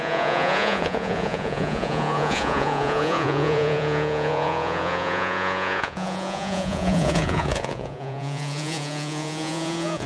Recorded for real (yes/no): no